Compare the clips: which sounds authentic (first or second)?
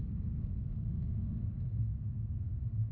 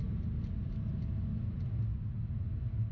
second